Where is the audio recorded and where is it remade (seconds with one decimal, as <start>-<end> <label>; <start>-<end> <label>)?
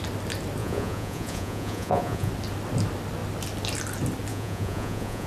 0.0-0.6 recorded; 0.6-2.3 remade; 2.3-4.3 recorded; 4.3-5.3 remade